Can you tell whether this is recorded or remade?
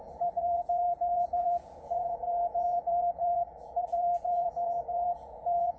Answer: remade